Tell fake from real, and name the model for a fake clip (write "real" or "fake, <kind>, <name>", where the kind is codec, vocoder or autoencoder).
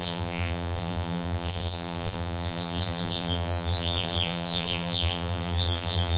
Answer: fake, vocoder, BigVGAN v2